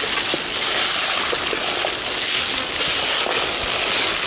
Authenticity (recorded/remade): recorded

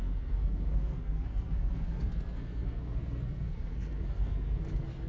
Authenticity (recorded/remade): remade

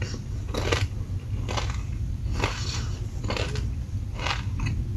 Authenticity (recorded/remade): recorded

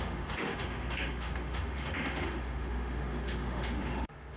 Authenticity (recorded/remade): remade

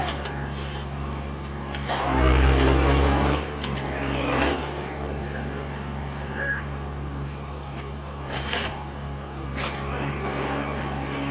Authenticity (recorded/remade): remade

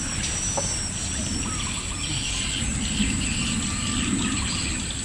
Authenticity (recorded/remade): recorded